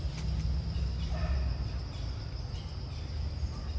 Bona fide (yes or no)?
yes